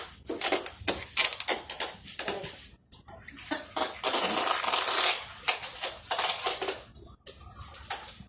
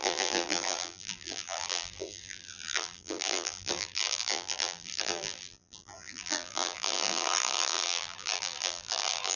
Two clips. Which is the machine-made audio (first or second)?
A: second